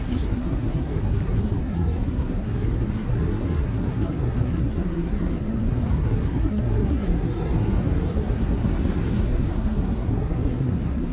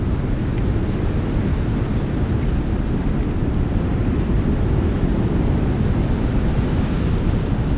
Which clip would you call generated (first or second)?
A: first